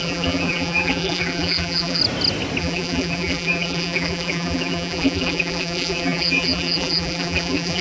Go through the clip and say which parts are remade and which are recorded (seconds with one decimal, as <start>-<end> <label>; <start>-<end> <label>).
0.0-2.0 remade; 2.0-2.6 recorded; 2.6-7.8 remade